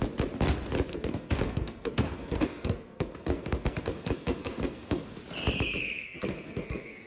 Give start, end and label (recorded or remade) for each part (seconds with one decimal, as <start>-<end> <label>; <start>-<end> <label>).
0.0-0.9 recorded; 0.9-5.2 remade; 5.2-5.8 recorded; 5.8-7.1 remade